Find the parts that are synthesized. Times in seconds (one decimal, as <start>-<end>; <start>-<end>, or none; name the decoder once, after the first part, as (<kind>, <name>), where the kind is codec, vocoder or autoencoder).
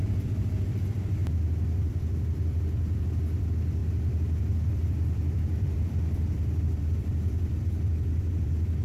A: 0.0-8.8 (vocoder, BigVGAN v2)